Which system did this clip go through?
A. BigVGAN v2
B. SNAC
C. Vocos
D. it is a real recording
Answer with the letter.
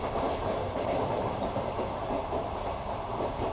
A